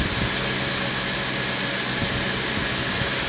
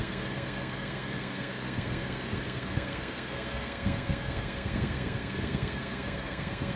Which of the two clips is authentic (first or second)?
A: first